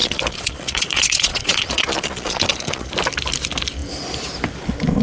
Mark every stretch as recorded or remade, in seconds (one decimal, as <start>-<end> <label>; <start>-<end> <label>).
0.0-2.9 remade; 2.9-5.0 recorded